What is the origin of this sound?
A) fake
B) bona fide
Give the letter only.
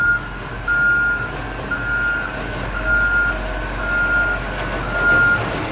B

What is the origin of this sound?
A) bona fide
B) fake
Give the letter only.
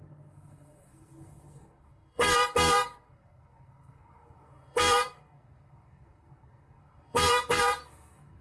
B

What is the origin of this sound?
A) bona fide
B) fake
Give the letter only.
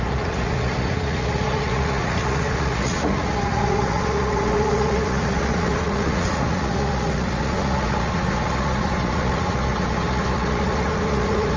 B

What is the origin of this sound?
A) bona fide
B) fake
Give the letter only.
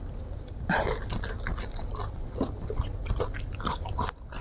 A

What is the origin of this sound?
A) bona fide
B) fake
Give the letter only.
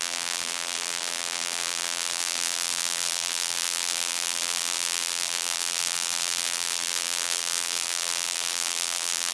B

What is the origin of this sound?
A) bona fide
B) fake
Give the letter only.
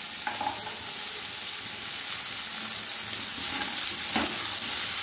A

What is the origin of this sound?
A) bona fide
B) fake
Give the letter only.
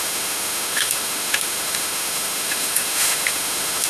B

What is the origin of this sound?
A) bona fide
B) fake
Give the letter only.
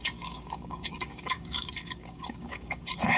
B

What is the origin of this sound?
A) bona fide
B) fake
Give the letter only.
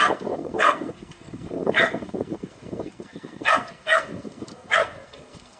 B